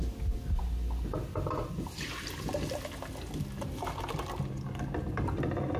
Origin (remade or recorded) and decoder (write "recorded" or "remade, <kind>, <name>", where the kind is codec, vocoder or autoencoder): recorded